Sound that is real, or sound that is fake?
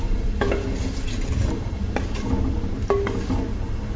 real